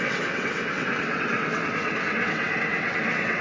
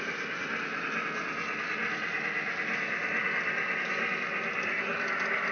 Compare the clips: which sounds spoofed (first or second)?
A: first